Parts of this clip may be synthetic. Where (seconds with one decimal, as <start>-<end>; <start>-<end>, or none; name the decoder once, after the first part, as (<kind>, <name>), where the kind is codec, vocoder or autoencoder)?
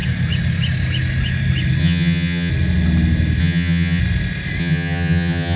1.8-2.5 (vocoder, HiFi-GAN); 3.4-4.0; 4.6-5.6